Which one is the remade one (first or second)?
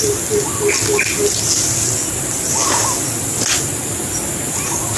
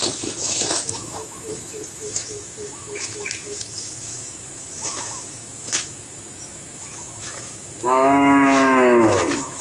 second